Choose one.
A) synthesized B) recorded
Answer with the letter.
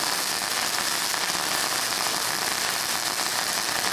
B